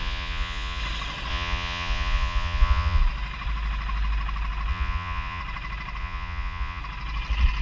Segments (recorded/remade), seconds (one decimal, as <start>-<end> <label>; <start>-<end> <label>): 0.0-0.8 remade; 0.8-1.3 recorded; 1.3-3.0 remade; 3.0-4.7 recorded; 4.7-5.4 remade; 5.4-6.0 recorded; 6.0-6.8 remade; 6.8-7.6 recorded